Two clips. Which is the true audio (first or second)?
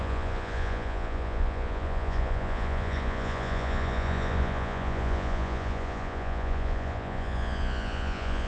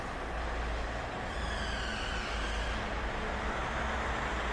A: second